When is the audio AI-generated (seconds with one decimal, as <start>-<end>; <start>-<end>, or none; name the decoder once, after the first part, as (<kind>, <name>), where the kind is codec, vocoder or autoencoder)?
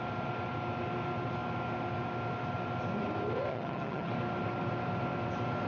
3.5-4.1 (vocoder, HiFi-GAN)